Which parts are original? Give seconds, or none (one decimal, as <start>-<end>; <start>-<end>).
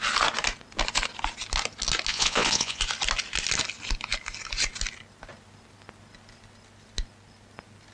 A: 0.0-2.1; 2.8-7.9